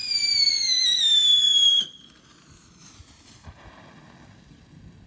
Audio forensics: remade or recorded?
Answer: recorded